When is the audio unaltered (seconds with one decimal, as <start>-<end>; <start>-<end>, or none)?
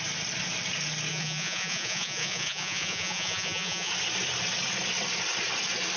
0.0-1.1; 3.9-6.0